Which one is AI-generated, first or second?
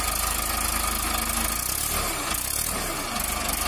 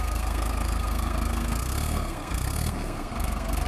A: second